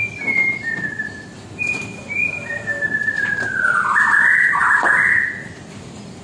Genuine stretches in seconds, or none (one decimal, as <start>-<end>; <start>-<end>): 0.0-4.6; 5.7-6.2